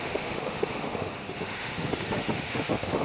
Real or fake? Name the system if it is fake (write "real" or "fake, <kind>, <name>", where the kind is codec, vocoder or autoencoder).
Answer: fake, autoencoder, DAC-VAE